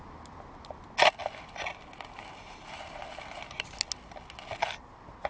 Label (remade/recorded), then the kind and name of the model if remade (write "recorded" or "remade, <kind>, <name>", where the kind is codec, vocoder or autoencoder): recorded